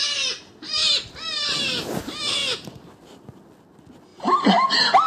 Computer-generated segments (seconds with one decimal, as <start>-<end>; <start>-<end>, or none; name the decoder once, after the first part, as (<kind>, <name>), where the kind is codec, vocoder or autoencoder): 2.4-3.0 (vocoder, BigVGAN v2); 4.1-5.1